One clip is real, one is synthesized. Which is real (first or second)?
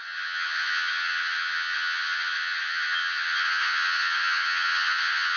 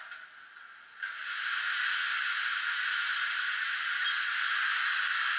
second